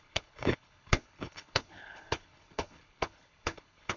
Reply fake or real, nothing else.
fake